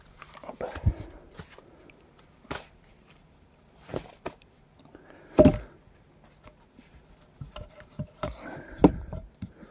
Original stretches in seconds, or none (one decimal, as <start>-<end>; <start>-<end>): 3.9-7.7